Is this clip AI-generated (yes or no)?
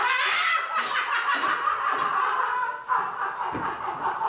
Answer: no